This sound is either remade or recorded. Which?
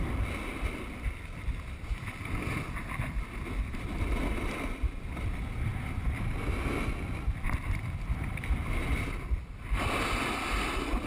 recorded